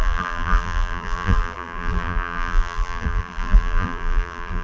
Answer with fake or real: fake